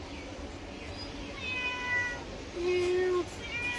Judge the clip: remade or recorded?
recorded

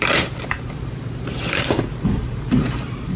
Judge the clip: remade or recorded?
remade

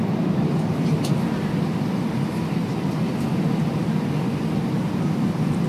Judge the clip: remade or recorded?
recorded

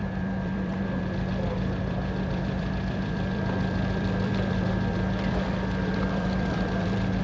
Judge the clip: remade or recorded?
remade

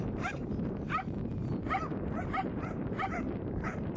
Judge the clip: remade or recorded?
remade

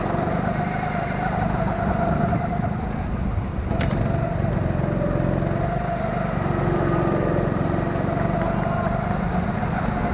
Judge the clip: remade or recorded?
recorded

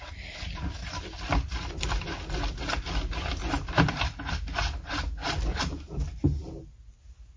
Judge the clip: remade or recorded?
recorded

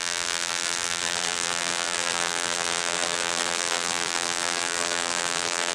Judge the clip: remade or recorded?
remade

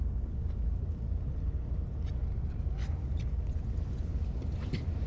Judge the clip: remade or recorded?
recorded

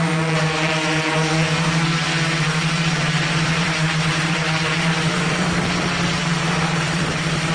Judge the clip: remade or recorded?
remade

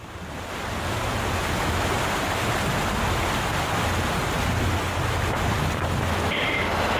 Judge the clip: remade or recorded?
recorded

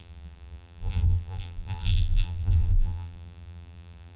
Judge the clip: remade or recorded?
remade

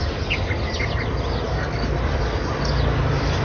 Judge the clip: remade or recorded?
recorded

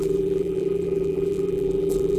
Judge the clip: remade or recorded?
remade